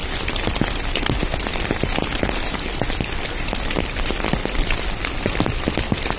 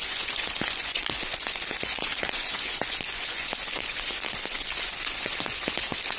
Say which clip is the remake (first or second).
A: second